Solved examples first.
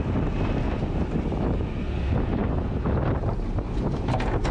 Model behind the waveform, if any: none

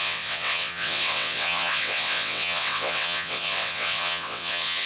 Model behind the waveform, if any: vocoder, WaveNeXt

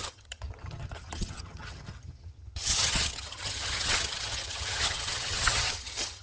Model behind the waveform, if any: vocoder, HiFi-GAN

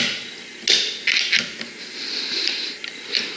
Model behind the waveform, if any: none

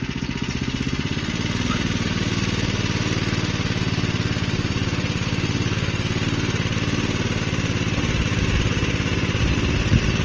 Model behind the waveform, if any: none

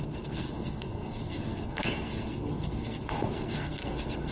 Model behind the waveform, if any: codec, SNAC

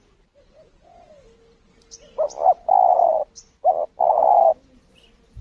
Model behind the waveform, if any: none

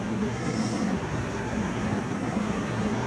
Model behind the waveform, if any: codec, SNAC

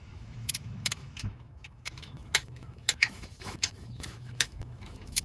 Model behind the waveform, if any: autoencoder, DAC-VAE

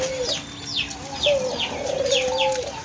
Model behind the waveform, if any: none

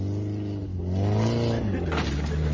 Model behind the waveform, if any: none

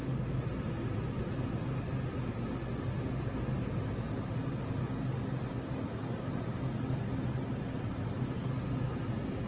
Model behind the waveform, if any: none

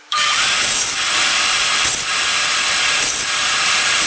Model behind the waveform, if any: vocoder, BigVGAN v2